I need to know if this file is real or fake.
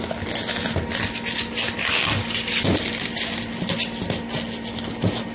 real